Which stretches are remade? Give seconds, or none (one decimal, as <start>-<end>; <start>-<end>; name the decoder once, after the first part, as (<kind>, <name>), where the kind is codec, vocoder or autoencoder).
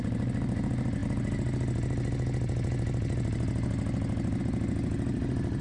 none